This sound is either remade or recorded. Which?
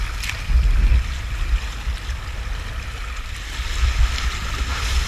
recorded